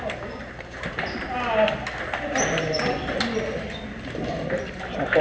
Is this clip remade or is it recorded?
recorded